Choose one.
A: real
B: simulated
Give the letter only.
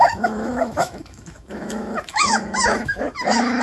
B